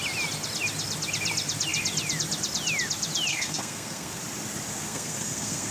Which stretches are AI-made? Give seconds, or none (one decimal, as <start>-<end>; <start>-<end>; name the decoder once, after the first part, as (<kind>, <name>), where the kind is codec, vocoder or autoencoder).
3.3-4.2 (codec, SNAC); 4.8-5.7